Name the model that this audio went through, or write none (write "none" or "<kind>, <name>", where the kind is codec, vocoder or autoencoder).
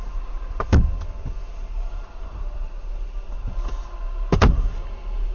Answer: none